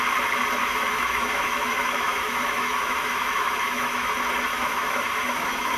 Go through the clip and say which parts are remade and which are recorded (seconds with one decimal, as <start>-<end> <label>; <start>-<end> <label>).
0.0-0.6 recorded; 0.6-4.1 remade; 4.1-4.5 recorded; 4.5-5.8 remade

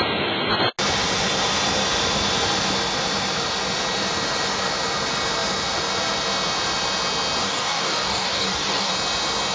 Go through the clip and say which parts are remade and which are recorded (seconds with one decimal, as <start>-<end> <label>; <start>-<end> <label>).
0.0-7.4 recorded; 7.4-8.9 remade; 8.9-9.5 recorded

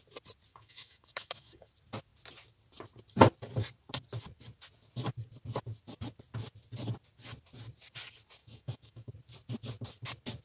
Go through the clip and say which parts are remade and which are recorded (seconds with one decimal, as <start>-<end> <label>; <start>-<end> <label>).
0.0-0.5 recorded; 0.5-1.7 remade; 1.7-8.4 recorded; 8.4-9.1 remade; 9.1-10.4 recorded

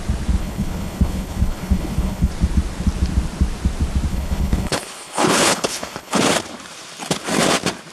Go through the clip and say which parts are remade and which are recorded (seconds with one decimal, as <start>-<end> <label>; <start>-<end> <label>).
0.0-0.4 recorded; 0.4-2.3 remade; 2.3-4.1 recorded; 4.1-6.2 remade; 6.2-7.9 recorded

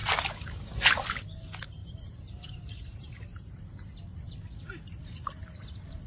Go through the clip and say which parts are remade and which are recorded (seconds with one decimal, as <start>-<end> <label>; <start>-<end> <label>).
0.0-0.6 remade; 0.6-1.8 recorded; 1.8-3.6 remade; 3.6-5.0 recorded; 5.0-6.1 remade